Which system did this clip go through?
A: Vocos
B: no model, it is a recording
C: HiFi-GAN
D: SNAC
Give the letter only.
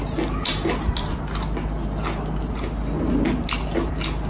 B